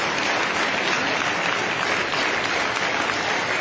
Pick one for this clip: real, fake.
real